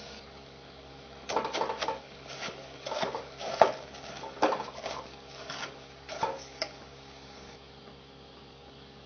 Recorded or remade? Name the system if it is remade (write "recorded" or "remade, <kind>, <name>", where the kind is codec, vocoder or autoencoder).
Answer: remade, codec, DAC